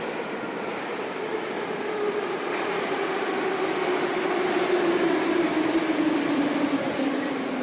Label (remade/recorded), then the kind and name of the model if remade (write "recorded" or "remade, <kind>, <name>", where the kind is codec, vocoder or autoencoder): remade, vocoder, BigVGAN v2